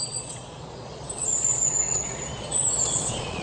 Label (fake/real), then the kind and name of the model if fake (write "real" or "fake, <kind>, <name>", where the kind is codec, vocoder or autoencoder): fake, vocoder, Vocos